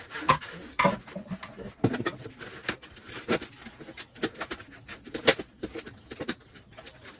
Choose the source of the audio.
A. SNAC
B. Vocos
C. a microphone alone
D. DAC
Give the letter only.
C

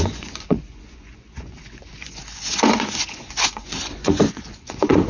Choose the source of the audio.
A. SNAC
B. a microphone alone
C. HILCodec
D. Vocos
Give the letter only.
D